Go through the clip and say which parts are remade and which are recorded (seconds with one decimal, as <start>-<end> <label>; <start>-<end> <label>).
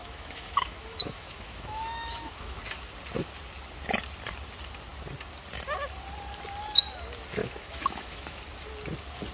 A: 0.0-2.6 remade; 2.6-7.4 recorded; 7.4-8.4 remade; 8.4-9.3 recorded